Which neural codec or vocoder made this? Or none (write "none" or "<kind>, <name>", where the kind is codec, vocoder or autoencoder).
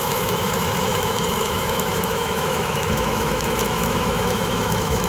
autoencoder, DAC-VAE